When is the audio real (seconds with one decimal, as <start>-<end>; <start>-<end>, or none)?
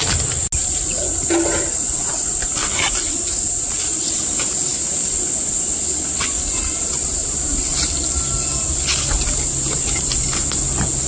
0.0-11.1